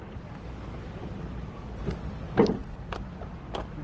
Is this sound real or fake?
real